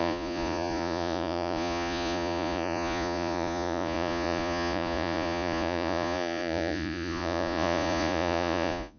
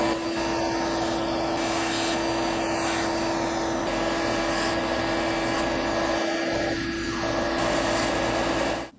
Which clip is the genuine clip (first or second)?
second